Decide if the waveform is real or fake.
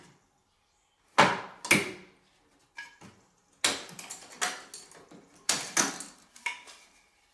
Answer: real